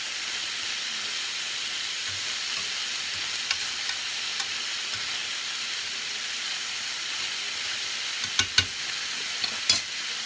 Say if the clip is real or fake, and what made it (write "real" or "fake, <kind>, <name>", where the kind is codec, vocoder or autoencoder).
real